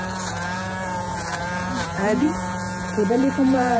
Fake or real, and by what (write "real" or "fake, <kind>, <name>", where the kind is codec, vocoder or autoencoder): fake, vocoder, Vocos